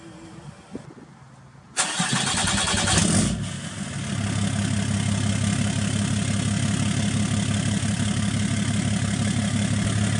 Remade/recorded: recorded